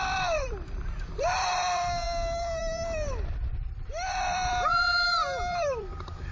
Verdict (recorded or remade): remade